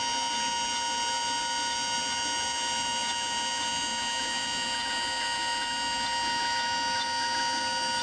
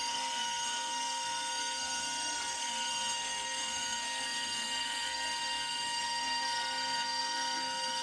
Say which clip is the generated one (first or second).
second